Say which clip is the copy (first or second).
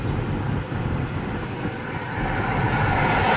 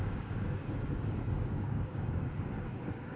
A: second